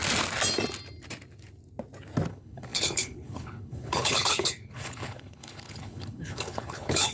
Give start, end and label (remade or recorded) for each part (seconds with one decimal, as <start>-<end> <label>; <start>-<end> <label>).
0.0-2.3 recorded; 2.3-7.1 remade